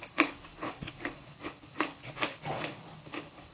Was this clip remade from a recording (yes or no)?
yes